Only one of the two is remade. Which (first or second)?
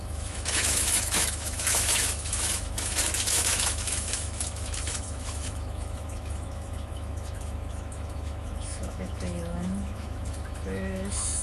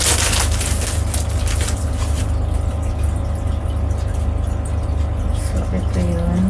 first